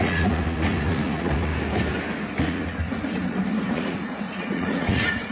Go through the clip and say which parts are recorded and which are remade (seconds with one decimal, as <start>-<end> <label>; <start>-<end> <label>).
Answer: 0.0-1.5 remade; 1.5-2.4 recorded; 2.4-5.3 remade